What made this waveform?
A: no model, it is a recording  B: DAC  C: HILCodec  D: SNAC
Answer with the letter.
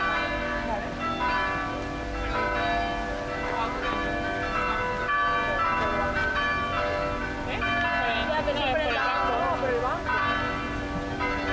A